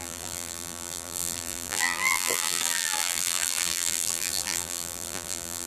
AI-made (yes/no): yes